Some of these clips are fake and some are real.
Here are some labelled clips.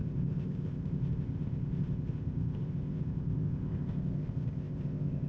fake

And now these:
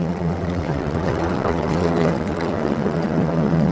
fake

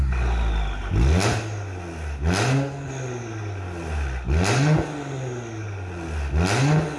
real